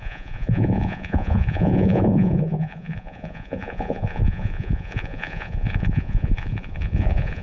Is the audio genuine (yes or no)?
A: no